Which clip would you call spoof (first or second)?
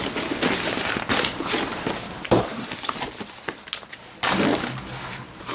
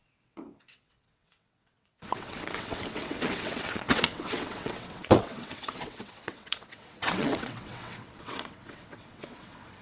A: second